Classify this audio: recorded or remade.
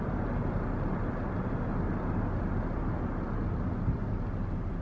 recorded